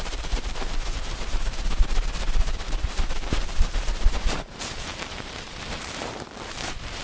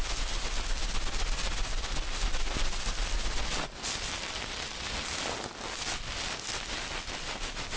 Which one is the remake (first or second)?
first